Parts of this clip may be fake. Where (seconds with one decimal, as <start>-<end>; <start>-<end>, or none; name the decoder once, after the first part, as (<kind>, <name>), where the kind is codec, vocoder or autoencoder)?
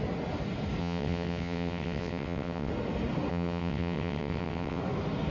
0.8-2.7 (vocoder, WaveNeXt); 3.3-4.8